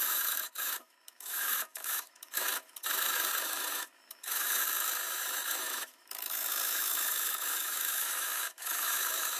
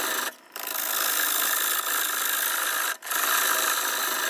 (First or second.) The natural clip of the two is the second